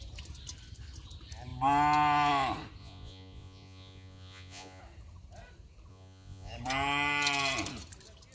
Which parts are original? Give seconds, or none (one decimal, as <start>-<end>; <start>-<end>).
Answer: 0.0-2.8; 4.8-5.9; 6.5-8.3